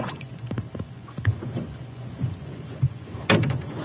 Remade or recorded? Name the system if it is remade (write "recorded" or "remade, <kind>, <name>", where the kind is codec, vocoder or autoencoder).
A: remade, vocoder, Vocos